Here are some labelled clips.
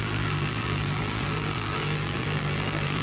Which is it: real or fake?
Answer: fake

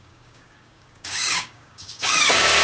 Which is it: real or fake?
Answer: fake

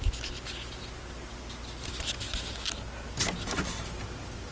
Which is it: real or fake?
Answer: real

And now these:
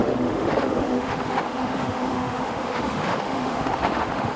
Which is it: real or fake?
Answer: fake